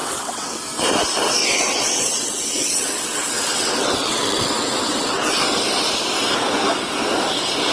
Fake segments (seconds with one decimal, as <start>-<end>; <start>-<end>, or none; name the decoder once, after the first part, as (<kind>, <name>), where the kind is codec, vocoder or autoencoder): 0.0-0.6 (vocoder, WaveNeXt); 1.4-5.4